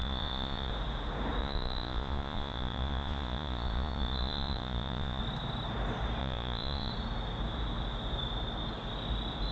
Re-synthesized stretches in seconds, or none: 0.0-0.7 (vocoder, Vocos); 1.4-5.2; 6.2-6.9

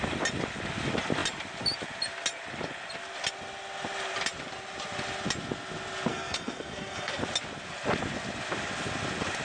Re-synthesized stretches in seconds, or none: 6.1-7.2 (codec, SNAC)

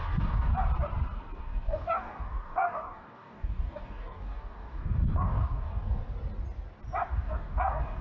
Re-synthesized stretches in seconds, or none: 0.0-0.5 (codec, DAC); 1.4-6.0; 7.1-8.0

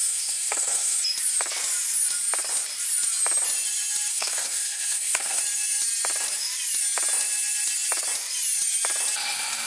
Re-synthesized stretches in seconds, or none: 0.0-1.0 (codec, SNAC); 4.1-5.4

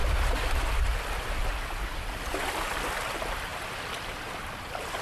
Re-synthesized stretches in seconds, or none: none